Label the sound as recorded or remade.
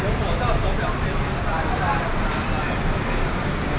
recorded